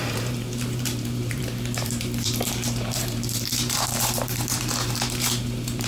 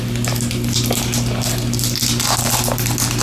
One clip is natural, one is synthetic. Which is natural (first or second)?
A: second